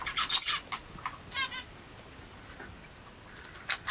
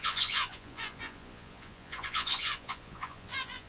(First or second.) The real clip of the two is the first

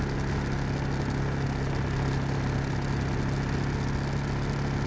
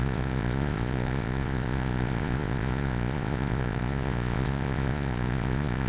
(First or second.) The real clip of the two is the first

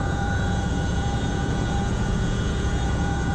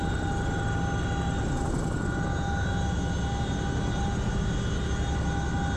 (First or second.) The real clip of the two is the second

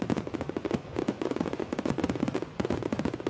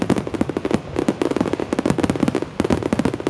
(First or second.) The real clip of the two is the second